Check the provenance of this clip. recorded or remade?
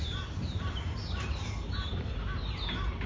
remade